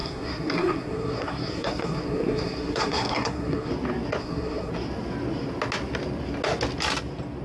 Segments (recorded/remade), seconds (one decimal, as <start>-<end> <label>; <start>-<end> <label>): 0.0-3.7 remade; 3.7-4.2 recorded; 4.2-4.7 remade; 4.7-7.4 recorded